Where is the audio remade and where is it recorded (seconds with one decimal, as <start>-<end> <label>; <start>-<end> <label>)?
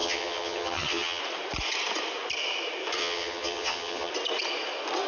0.0-1.2 remade; 1.2-3.0 recorded; 3.0-4.1 remade; 4.1-5.1 recorded